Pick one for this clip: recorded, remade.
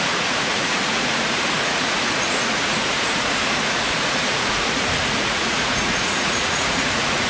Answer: remade